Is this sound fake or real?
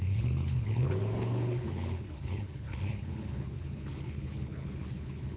fake